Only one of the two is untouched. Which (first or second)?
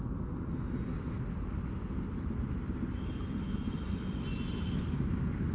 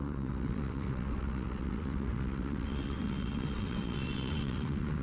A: first